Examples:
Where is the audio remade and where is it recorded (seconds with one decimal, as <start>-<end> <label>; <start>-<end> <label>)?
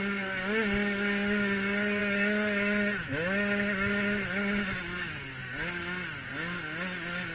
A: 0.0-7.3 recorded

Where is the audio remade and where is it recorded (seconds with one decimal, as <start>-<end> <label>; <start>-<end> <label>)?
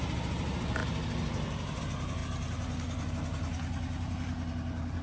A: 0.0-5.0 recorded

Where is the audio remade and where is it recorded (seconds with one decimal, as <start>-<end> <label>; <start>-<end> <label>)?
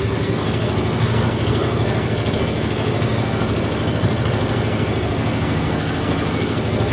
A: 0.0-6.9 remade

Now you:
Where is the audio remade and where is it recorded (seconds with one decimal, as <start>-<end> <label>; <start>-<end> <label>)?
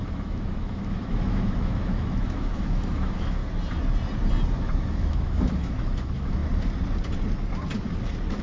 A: 0.0-3.4 remade; 3.4-4.6 recorded; 4.6-6.4 remade; 6.4-8.4 recorded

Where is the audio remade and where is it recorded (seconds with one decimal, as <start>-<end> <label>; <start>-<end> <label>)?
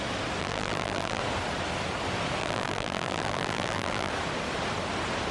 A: 0.0-0.4 recorded; 0.4-1.2 remade; 1.2-2.4 recorded; 2.4-4.1 remade; 4.1-5.3 recorded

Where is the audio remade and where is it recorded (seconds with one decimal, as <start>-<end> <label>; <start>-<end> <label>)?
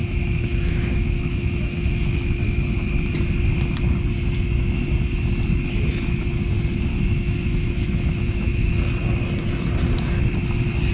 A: 0.0-2.4 remade; 2.4-6.9 recorded; 6.9-8.7 remade; 8.7-10.9 recorded